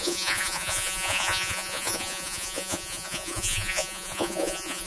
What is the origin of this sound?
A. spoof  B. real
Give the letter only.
A